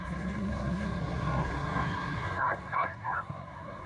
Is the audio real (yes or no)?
no